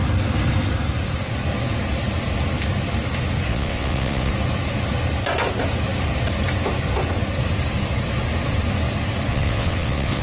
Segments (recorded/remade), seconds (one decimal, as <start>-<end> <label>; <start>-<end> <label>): 0.0-3.5 recorded; 3.5-4.3 remade; 4.3-9.3 recorded; 9.3-10.2 remade